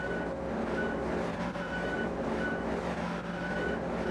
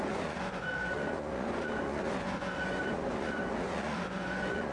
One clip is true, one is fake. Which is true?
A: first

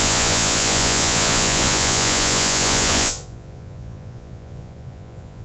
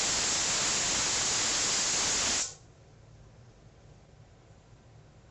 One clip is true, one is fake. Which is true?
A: second